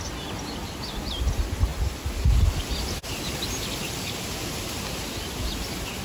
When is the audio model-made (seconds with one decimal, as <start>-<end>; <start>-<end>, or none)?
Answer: none

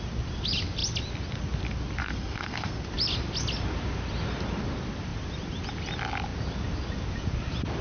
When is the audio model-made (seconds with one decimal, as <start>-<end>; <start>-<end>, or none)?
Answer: 2.0-2.8

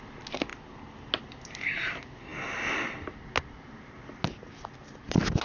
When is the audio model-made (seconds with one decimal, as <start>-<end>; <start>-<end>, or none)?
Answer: none